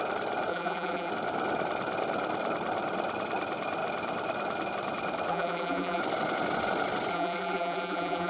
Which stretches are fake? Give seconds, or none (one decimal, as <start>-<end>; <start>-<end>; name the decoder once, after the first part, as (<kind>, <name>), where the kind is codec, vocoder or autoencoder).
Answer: 0.5-1.1 (vocoder, BigVGAN v2); 5.3-6.0; 7.1-8.3